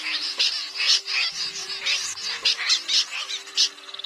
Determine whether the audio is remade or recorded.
recorded